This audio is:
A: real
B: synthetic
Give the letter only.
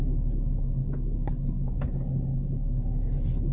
A